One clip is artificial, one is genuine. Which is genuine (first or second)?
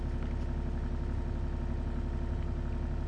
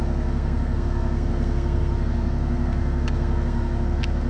first